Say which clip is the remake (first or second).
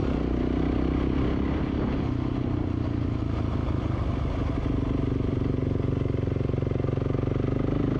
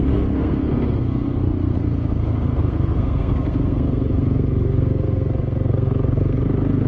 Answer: second